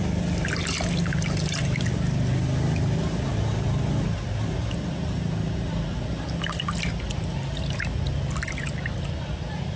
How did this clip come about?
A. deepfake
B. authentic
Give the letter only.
B